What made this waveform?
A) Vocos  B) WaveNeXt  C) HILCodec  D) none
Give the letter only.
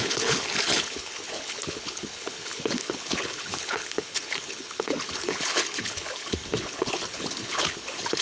C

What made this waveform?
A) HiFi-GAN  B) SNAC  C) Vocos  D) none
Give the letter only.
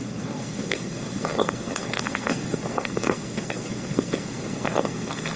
B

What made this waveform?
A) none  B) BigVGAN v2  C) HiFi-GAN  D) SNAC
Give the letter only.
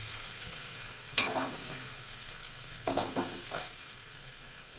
D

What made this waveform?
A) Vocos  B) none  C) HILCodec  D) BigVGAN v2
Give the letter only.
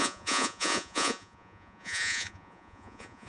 A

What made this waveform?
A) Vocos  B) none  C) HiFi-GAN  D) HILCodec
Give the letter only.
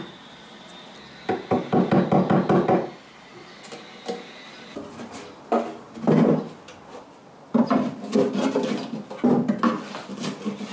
B